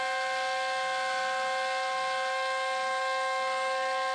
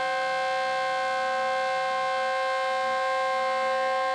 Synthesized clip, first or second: first